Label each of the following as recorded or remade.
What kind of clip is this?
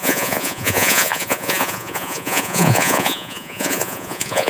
remade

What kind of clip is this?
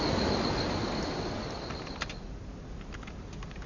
recorded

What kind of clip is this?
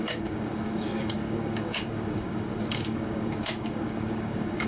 remade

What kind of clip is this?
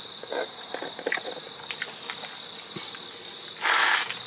recorded